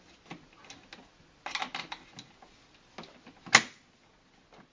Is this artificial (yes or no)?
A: no